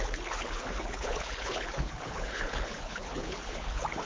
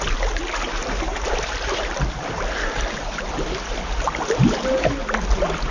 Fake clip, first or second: first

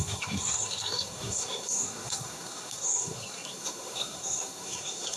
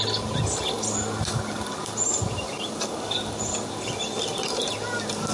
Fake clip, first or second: first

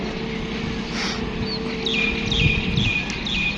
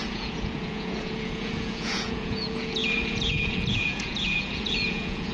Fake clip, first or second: second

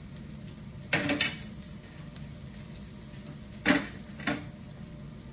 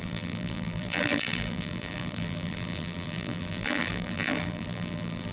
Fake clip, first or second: second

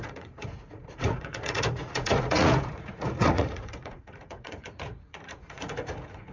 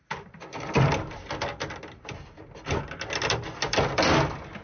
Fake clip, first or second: first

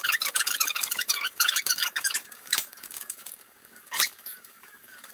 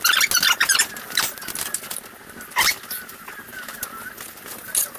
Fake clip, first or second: first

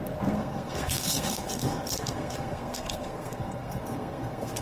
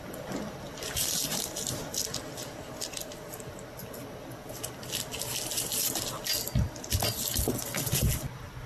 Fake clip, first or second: first